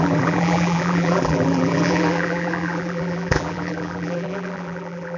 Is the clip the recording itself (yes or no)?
no